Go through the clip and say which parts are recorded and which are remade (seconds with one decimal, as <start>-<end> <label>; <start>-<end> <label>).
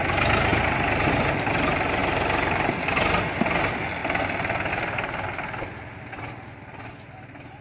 0.0-7.6 recorded